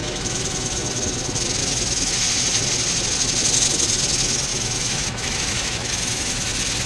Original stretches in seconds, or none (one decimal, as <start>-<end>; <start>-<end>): 0.8-1.6; 2.1-4.5; 6.5-6.9